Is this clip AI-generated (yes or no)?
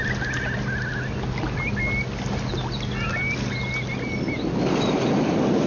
no